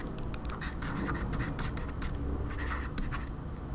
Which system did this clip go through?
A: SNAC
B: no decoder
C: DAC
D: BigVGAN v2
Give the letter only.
B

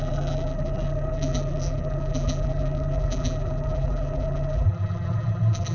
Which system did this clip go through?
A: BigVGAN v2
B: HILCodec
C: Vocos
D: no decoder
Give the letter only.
A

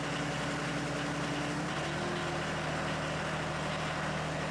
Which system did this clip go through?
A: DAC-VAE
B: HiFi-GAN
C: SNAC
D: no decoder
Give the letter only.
D